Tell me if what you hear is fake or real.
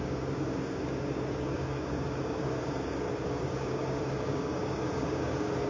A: fake